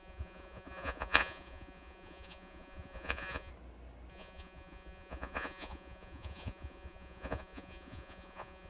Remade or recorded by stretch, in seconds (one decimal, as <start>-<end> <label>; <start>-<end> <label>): 0.0-3.5 remade; 3.5-4.1 recorded; 4.1-8.7 remade